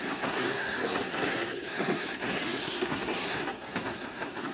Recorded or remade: remade